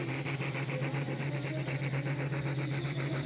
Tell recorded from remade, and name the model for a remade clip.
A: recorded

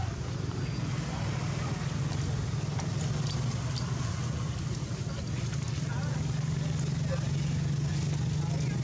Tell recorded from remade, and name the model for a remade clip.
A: recorded